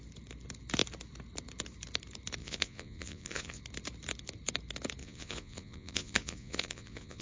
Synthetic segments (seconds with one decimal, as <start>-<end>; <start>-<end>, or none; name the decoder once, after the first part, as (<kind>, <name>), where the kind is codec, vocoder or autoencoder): 2.4-3.6 (vocoder, Vocos); 5.0-7.2